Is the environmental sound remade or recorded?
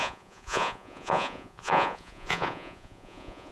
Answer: remade